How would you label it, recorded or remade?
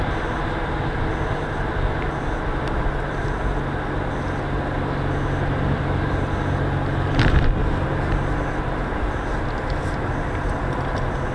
recorded